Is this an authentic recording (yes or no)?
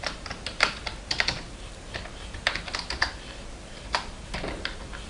yes